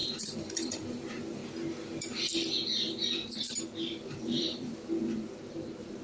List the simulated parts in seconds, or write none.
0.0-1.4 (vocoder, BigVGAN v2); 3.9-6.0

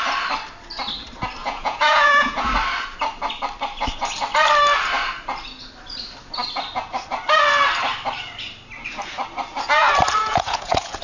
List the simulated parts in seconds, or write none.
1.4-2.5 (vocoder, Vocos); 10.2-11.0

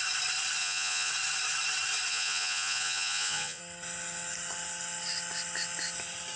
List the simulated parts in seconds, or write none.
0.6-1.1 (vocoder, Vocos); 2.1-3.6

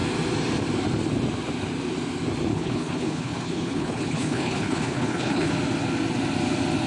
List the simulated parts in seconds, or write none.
2.5-5.5 (codec, HILCodec)